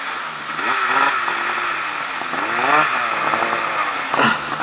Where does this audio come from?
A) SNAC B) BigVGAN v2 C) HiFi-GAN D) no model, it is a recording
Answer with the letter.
D